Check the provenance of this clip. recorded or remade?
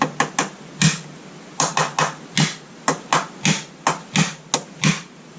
recorded